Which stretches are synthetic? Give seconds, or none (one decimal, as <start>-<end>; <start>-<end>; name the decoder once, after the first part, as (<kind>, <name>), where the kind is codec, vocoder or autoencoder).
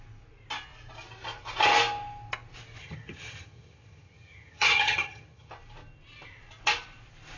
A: 2.8-5.5 (vocoder, HiFi-GAN)